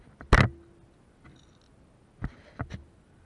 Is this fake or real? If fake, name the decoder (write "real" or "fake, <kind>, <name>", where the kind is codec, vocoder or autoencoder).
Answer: real